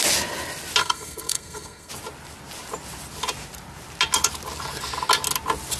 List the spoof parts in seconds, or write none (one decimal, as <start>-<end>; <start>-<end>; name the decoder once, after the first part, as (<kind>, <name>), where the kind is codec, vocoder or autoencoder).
0.8-1.9 (codec, SNAC)